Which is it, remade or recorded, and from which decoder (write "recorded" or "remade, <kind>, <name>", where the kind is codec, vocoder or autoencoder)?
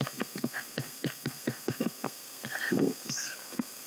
remade, codec, SNAC